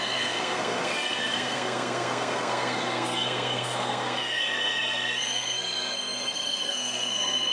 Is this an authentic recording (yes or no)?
no